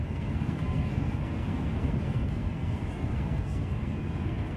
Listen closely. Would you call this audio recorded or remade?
remade